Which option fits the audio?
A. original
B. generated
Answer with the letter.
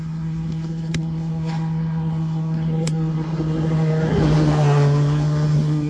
B